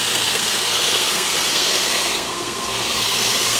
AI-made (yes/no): yes